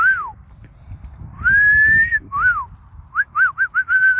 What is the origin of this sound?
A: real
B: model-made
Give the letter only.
A